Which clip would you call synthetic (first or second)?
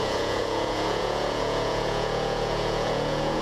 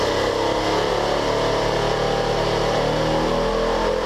first